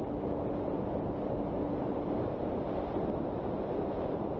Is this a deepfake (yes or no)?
no